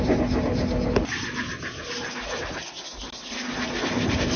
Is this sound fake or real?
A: real